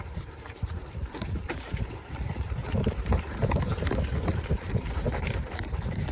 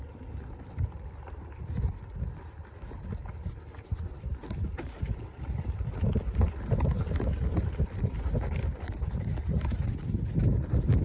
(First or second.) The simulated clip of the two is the first